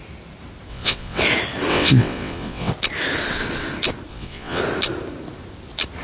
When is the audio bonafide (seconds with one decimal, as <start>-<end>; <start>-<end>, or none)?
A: 0.0-0.7; 1.2-1.7; 2.7-4.1; 4.6-6.0